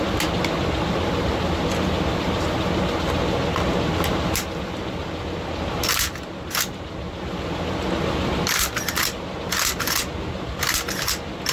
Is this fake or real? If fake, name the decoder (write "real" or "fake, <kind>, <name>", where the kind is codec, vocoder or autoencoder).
real